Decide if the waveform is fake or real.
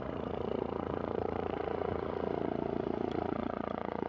fake